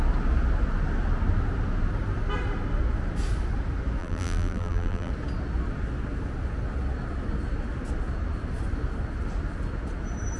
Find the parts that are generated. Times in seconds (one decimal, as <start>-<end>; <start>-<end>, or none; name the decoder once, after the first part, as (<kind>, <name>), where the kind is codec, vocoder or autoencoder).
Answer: 4.0-5.1 (vocoder, BigVGAN v2)